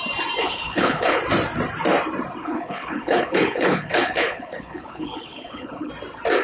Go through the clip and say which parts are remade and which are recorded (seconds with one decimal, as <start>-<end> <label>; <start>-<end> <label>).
0.0-0.4 recorded; 0.4-1.2 remade; 1.2-2.4 recorded; 2.4-5.9 remade; 5.9-6.4 recorded

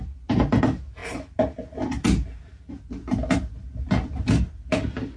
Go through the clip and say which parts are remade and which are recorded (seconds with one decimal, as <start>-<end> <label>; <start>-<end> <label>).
0.0-5.2 recorded

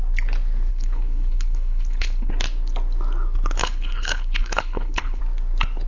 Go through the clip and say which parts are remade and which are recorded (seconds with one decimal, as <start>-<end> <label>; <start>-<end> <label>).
0.0-0.7 recorded; 0.7-2.3 remade; 2.3-3.6 recorded; 3.6-5.2 remade; 5.2-5.9 recorded

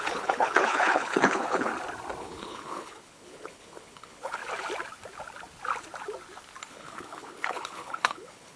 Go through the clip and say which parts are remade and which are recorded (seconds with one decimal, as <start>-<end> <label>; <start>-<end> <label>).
0.0-1.7 remade; 1.7-2.2 recorded; 2.2-4.4 remade; 4.4-6.7 recorded; 6.7-8.6 remade